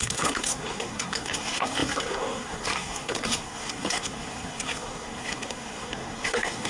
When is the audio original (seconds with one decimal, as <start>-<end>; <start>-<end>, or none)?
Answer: none